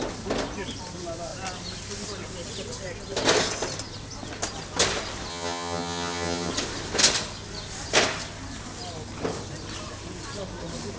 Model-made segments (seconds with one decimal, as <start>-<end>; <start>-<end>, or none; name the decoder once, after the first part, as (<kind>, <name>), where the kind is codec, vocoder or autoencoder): 5.3-6.5 (vocoder, HiFi-GAN)